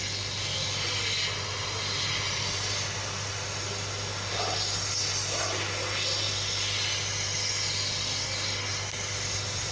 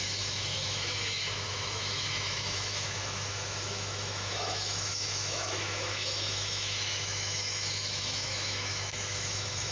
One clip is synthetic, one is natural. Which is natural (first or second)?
first